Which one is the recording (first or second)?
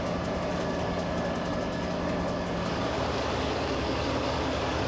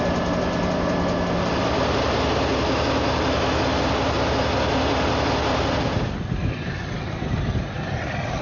second